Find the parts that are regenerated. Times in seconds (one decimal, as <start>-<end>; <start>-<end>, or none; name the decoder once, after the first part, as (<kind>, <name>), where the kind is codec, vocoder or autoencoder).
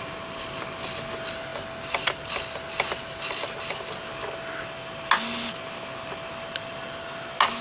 none